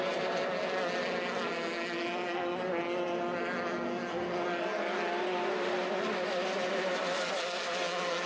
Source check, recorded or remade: recorded